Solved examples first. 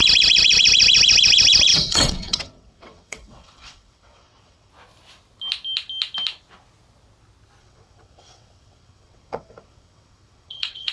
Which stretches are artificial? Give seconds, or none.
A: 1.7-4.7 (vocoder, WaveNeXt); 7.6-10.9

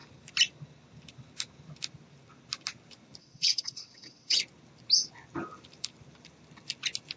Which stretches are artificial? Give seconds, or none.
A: 3.2-4.4 (vocoder, WaveNeXt)

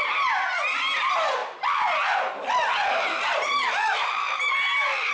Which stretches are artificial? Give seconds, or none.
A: none

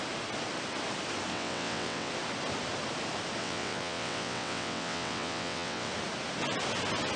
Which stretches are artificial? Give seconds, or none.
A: 1.3-2.1 (vocoder, WaveNeXt); 3.4-5.9

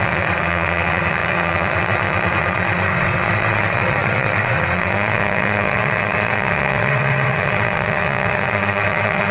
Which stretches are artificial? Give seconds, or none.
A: 0.0-9.3 (vocoder, WaveNeXt)

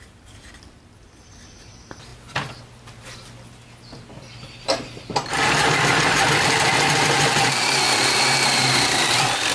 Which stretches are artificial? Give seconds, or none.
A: none

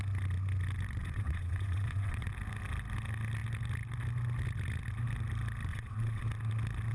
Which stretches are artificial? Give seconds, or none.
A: 1.0-2.3 (vocoder, WaveNeXt); 5.7-6.2

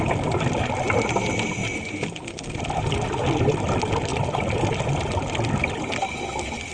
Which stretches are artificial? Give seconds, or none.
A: none